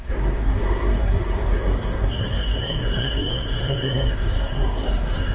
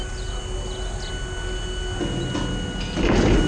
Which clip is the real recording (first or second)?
second